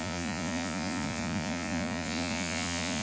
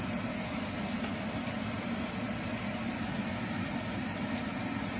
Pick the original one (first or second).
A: second